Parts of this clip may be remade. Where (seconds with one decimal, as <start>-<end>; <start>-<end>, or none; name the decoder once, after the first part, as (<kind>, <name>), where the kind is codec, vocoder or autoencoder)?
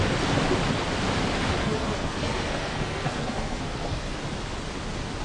1.6-4.2 (codec, SNAC)